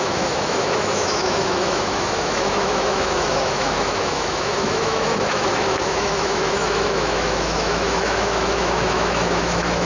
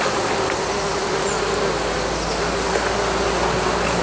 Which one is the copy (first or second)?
first